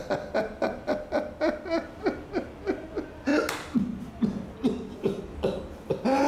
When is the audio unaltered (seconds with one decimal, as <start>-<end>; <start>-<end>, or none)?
0.0-6.3